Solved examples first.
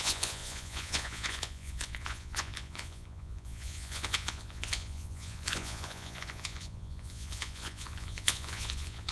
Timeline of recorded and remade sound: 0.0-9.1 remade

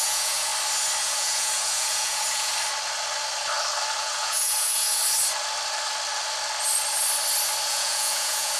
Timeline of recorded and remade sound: 0.0-0.5 remade; 0.5-1.0 recorded; 1.0-2.5 remade; 2.5-4.0 recorded; 4.0-5.0 remade; 5.0-7.7 recorded; 7.7-8.6 remade

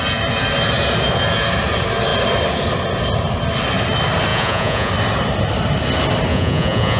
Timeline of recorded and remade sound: 0.0-4.3 recorded; 4.3-4.9 remade; 4.9-6.3 recorded; 6.3-7.0 remade

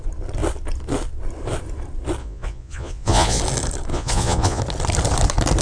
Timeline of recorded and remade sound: 0.0-2.2 recorded; 2.2-3.4 remade; 3.4-3.9 recorded; 3.9-4.6 remade; 4.6-5.6 recorded

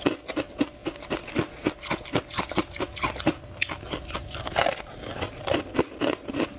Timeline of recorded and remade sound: 0.0-6.6 recorded